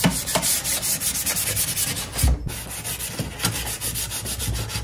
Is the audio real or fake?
real